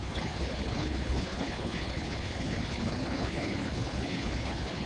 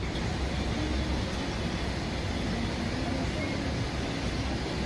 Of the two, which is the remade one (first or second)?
first